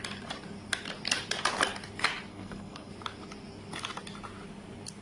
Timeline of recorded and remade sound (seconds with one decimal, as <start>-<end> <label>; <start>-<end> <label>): 0.0-2.3 recorded; 2.3-2.9 remade; 2.9-5.0 recorded